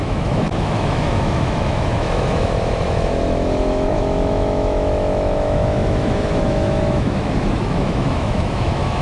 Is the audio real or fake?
fake